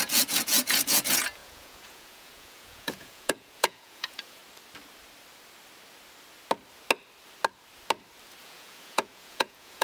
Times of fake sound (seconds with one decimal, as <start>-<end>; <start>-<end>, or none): 0.0-4.4; 8.4-9.8